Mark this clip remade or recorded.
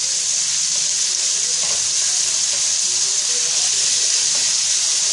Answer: remade